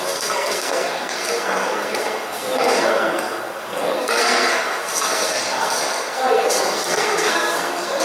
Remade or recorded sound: remade